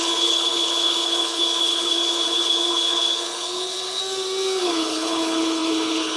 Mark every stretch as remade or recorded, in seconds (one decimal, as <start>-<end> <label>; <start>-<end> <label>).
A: 0.0-4.0 remade; 4.0-4.6 recorded; 4.6-6.2 remade